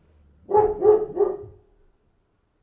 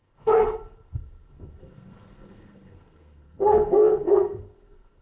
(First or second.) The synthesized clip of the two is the second